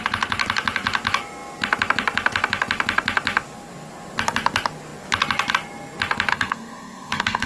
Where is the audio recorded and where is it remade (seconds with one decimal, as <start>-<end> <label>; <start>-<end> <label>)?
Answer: 0.0-6.3 recorded; 6.3-7.5 remade